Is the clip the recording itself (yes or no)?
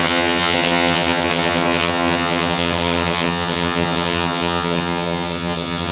no